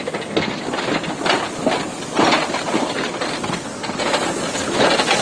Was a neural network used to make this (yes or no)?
no